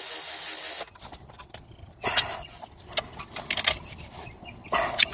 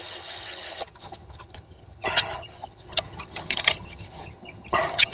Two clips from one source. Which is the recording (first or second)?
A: first